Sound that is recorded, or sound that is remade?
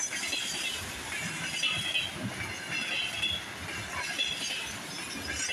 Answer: recorded